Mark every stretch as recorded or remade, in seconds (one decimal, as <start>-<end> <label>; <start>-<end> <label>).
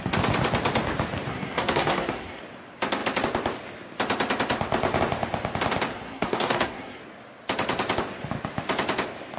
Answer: 0.0-1.3 recorded; 1.3-2.4 remade; 2.4-5.9 recorded; 5.9-7.0 remade; 7.0-9.4 recorded